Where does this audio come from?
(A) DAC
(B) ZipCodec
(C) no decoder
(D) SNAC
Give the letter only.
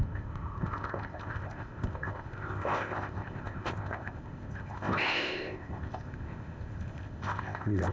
B